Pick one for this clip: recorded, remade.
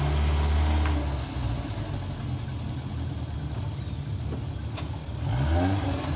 recorded